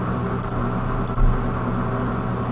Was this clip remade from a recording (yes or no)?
no